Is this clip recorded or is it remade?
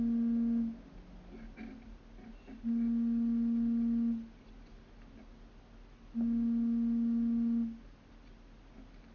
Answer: recorded